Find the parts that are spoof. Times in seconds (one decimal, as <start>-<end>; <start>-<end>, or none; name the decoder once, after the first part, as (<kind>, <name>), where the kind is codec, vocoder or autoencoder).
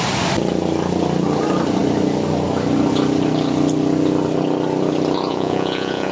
5.3-6.1 (vocoder, Vocos)